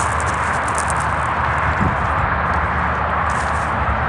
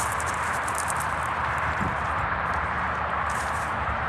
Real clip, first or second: first